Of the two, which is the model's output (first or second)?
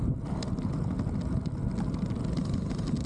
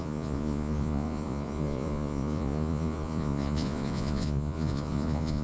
second